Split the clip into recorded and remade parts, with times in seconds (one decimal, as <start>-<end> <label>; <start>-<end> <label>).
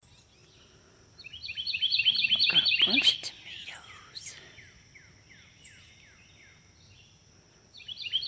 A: 0.0-8.3 recorded